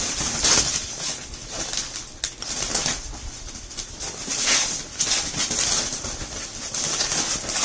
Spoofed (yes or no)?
no